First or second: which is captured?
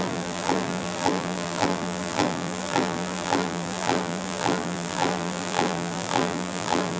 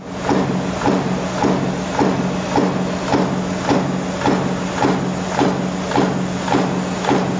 second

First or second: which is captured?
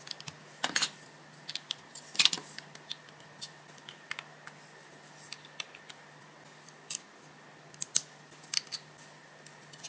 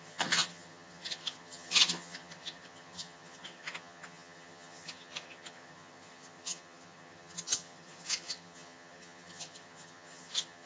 first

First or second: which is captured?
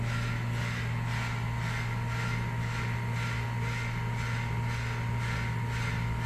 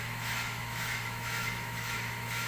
first